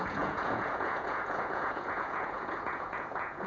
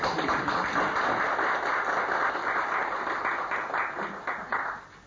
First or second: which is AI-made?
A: first